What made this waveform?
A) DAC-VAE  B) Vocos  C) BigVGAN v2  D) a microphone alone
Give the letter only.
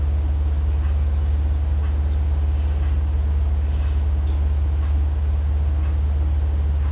D